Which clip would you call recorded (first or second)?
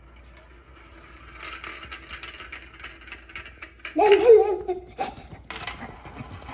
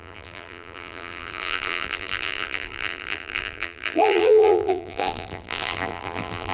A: first